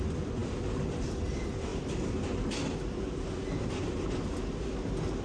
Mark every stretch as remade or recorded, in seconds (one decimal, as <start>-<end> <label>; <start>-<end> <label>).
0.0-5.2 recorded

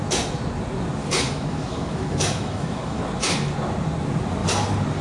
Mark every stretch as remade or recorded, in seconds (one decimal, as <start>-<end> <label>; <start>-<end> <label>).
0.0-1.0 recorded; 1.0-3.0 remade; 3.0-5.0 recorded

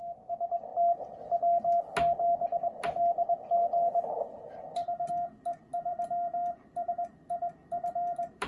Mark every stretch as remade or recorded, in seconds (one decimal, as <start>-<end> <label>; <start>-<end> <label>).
0.0-5.9 recorded; 5.9-6.9 remade; 6.9-7.6 recorded; 7.6-8.5 remade

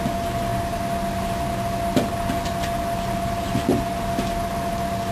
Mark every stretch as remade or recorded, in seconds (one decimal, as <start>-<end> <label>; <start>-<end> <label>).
0.0-0.5 remade; 0.5-3.0 recorded; 3.0-5.1 remade

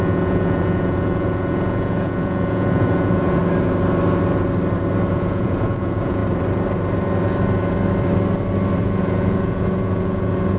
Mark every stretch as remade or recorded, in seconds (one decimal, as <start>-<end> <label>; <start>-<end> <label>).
0.0-3.4 remade; 3.4-5.1 recorded; 5.1-6.2 remade; 6.2-8.8 recorded; 8.8-10.6 remade